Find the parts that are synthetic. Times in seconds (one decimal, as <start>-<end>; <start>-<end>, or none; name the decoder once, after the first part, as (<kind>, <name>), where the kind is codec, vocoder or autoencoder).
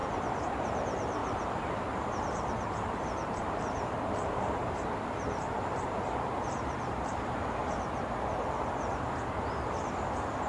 0.5-7.6 (vocoder, BigVGAN v2); 9.5-10.5